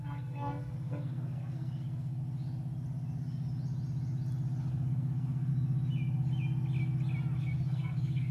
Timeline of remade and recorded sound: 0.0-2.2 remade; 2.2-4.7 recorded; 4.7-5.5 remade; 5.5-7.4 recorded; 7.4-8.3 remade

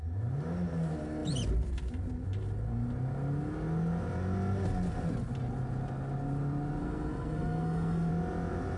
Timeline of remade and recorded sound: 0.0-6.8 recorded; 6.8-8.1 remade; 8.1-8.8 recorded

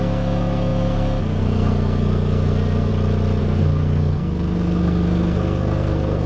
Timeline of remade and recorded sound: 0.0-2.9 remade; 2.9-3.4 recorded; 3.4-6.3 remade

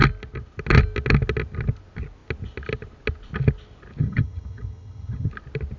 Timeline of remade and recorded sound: 0.0-4.0 recorded; 4.0-5.3 remade; 5.3-5.8 recorded